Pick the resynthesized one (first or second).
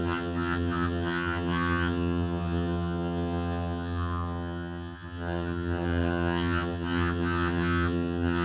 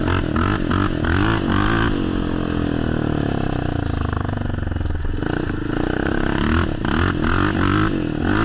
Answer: first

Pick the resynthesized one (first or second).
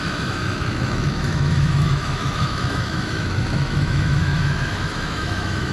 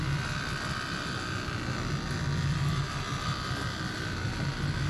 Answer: first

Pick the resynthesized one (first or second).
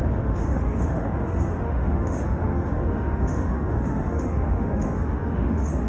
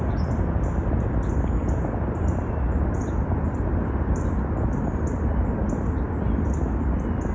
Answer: first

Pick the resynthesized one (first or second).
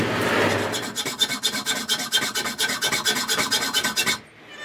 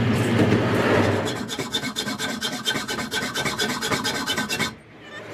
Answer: second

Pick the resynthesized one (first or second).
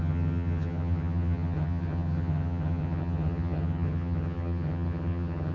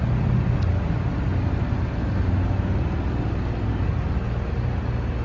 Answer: first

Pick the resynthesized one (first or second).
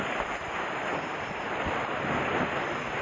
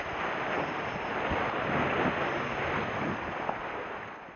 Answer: first